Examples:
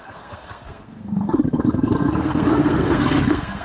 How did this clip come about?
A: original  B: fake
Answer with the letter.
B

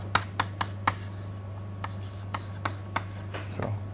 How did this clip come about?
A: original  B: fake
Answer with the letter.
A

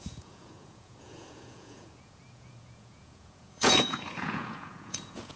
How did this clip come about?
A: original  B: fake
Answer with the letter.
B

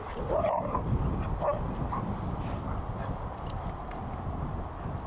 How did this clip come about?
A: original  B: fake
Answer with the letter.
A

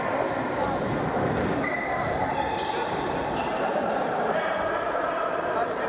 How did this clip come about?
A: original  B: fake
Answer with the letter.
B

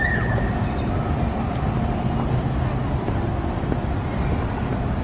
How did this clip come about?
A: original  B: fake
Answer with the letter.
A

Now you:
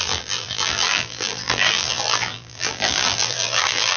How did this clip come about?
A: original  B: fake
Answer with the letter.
B